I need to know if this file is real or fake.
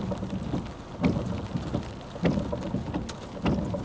real